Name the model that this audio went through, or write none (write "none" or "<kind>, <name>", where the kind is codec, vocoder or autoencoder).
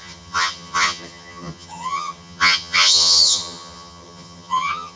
vocoder, HiFi-GAN